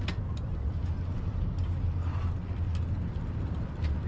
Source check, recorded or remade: recorded